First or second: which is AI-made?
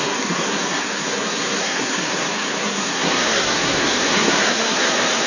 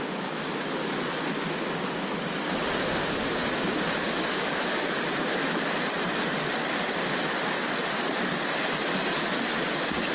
first